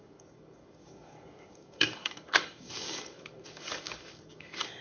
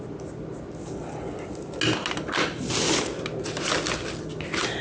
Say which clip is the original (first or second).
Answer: second